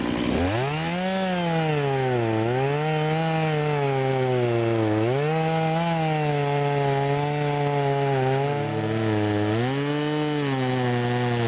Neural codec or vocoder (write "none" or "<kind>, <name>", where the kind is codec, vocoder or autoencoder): none